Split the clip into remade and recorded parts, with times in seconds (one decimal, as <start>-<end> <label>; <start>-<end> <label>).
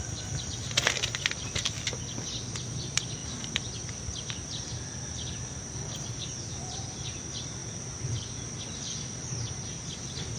0.0-3.2 recorded; 3.2-4.0 remade; 4.0-10.4 recorded